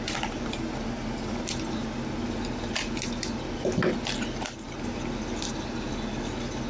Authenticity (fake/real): real